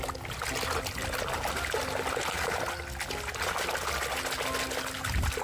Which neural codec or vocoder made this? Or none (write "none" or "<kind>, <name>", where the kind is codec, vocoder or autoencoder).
none